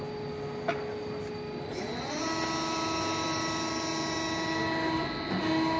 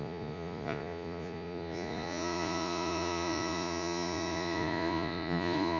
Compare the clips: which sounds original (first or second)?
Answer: first